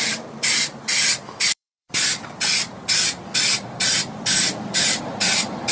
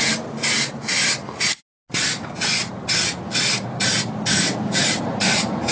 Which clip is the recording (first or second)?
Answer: second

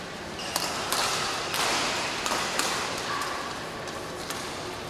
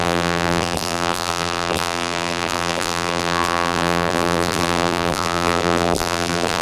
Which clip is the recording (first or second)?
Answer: first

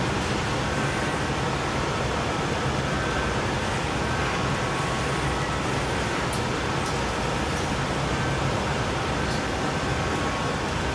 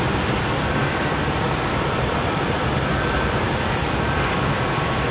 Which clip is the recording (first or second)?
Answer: first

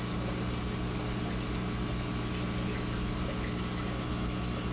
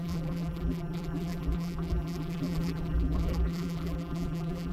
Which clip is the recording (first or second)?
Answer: first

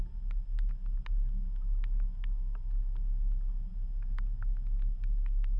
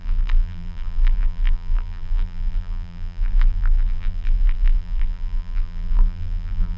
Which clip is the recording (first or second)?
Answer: first